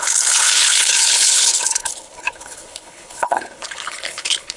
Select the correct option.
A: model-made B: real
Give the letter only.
A